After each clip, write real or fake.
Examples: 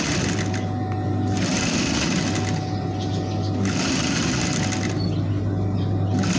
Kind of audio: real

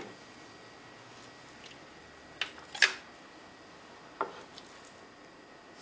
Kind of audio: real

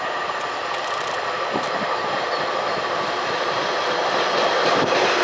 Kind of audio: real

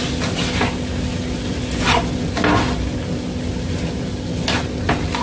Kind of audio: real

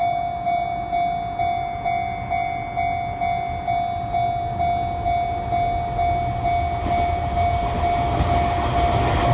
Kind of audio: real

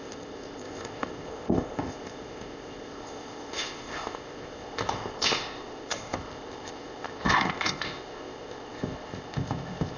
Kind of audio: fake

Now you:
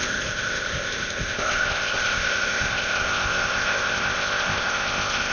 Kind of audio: fake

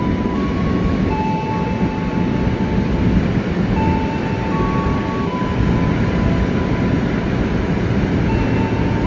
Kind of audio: real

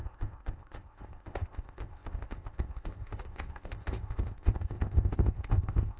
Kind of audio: fake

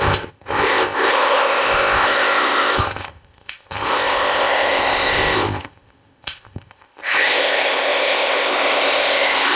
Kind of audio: fake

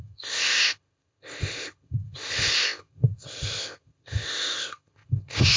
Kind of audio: fake